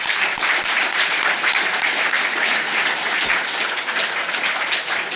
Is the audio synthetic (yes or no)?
no